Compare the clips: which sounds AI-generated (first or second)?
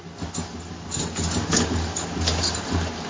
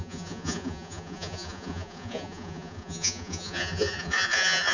second